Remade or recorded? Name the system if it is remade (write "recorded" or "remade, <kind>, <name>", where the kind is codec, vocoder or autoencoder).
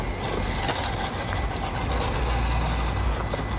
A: recorded